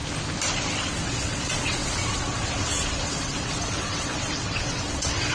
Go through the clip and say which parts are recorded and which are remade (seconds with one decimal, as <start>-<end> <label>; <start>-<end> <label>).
0.0-0.9 recorded; 0.9-5.3 remade